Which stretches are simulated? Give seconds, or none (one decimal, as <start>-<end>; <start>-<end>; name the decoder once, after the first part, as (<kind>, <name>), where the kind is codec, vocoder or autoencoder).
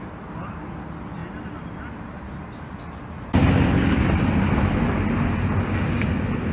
none